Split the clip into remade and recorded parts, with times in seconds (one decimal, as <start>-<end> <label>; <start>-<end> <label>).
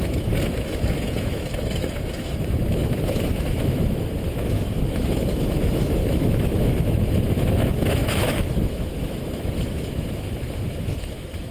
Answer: 0.0-11.5 remade